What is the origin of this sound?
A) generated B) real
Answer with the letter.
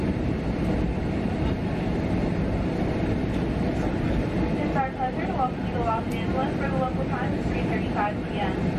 B